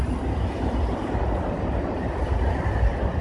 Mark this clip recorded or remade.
recorded